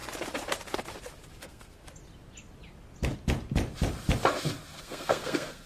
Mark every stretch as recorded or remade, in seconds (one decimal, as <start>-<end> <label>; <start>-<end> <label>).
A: 0.0-1.4 recorded; 1.4-1.8 remade; 1.8-4.8 recorded; 4.8-5.7 remade